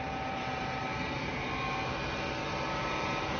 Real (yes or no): no